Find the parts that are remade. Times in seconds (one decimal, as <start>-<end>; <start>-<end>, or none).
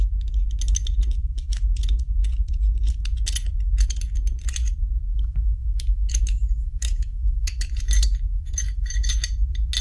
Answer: 5.1-7.8; 8.3-9.1